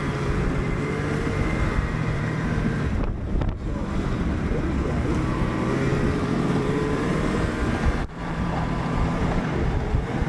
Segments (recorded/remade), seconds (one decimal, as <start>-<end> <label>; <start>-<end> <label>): 0.0-10.3 remade